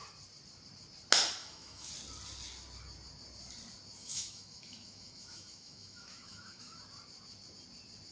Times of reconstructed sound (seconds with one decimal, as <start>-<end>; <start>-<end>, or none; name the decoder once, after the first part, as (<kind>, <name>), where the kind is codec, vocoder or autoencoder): 1.4-1.9 (autoencoder, DAC-VAE); 4.0-6.8